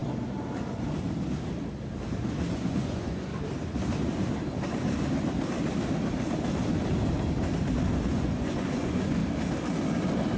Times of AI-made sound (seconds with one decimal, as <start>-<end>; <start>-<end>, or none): 2.5-3.3; 8.1-9.2